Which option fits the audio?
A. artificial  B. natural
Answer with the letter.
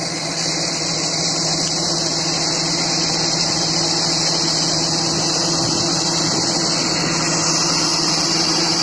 B